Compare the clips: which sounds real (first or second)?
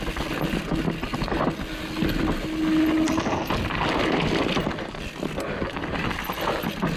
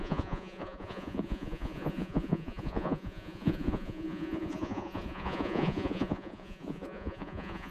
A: first